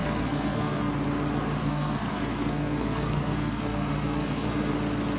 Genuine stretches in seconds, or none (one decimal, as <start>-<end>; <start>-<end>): 0.9-1.6; 4.7-5.2